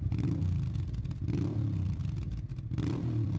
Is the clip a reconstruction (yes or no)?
yes